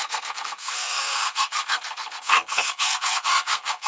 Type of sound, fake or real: fake